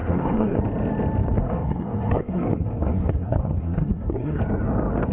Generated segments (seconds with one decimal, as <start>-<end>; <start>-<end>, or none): 0.0-0.6; 1.4-4.4